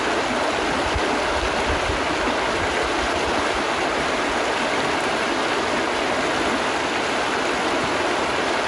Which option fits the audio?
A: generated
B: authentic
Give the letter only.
B